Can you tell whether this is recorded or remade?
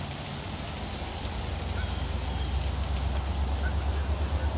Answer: recorded